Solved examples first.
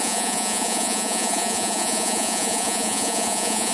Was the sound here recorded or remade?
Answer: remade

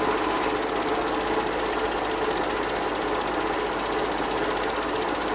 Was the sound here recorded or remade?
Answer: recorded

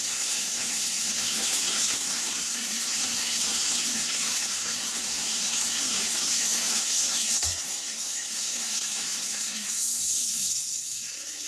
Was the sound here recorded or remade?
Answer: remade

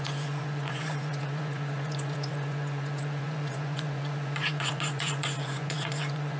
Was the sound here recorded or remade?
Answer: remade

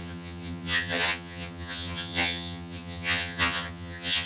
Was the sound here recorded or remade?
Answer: remade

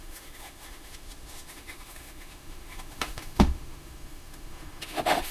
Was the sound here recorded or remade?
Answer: remade